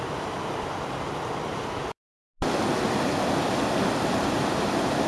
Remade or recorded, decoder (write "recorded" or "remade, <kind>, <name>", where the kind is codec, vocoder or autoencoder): recorded